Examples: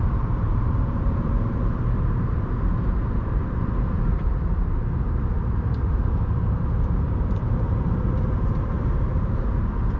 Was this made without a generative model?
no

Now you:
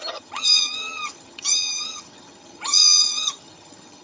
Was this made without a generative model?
no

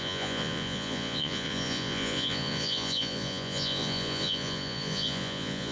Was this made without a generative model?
no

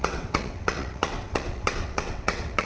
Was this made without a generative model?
no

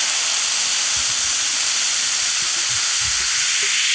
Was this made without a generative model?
yes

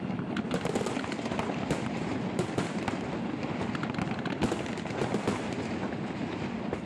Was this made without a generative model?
yes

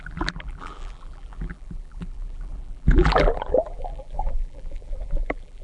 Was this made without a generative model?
no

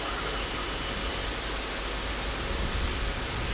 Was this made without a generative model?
yes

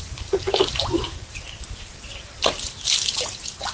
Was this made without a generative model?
no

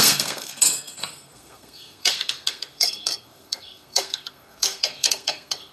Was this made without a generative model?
no